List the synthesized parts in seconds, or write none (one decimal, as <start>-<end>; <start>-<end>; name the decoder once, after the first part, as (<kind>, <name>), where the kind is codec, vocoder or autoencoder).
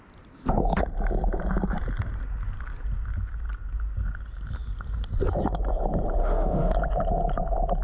6.2-6.7 (autoencoder, DAC-VAE)